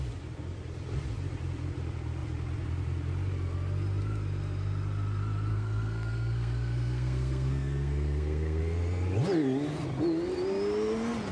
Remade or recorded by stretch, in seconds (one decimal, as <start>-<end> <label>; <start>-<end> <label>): 0.0-5.5 recorded; 5.5-8.6 remade; 8.6-11.3 recorded